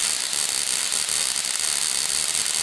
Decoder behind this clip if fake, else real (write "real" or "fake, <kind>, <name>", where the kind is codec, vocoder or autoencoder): real